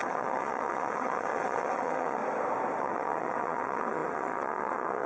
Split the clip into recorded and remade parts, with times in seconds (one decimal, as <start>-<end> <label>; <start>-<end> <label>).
0.0-2.2 remade; 2.2-2.8 recorded; 2.8-5.1 remade